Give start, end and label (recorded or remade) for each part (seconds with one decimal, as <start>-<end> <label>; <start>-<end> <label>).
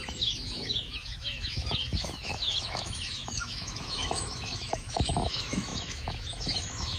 0.0-7.0 remade